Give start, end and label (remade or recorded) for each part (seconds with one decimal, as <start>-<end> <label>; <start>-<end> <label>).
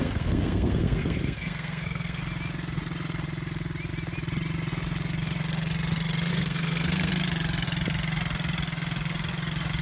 0.0-2.2 remade; 2.2-6.3 recorded; 6.3-7.1 remade; 7.1-9.8 recorded